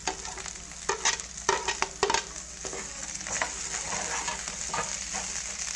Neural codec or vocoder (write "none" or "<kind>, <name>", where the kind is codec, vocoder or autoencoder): none